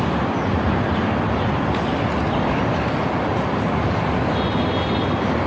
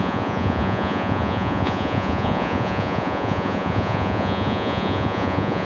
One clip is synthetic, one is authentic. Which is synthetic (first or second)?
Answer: second